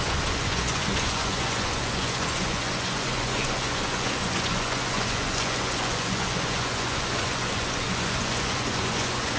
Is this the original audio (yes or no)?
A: no